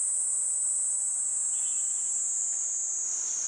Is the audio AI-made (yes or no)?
no